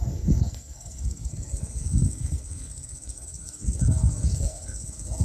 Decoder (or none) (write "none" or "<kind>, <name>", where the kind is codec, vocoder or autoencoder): codec, SNAC